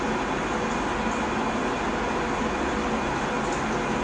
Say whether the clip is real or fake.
real